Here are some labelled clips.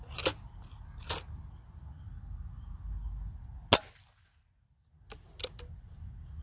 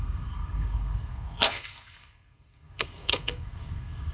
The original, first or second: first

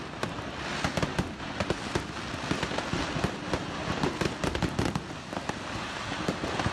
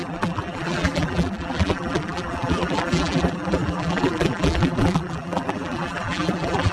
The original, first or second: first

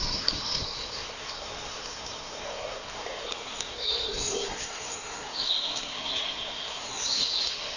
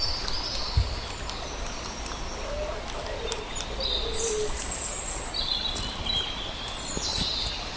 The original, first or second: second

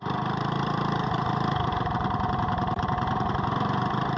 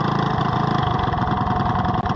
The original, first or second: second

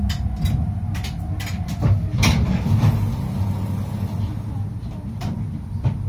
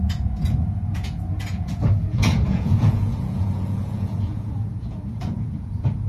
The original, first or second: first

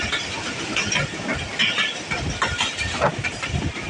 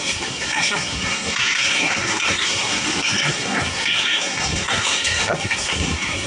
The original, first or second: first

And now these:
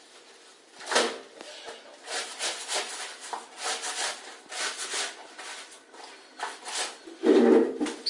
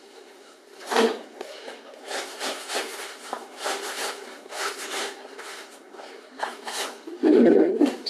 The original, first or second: first